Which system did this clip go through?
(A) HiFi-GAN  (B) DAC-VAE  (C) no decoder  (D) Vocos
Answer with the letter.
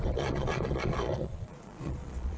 D